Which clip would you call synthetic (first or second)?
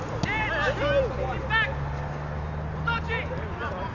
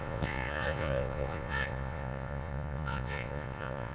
second